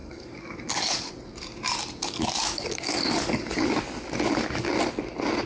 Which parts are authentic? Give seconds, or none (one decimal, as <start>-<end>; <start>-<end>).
1.1-2.0; 3.8-5.5